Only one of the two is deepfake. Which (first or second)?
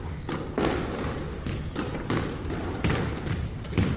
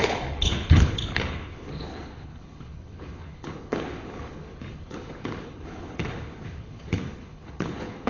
second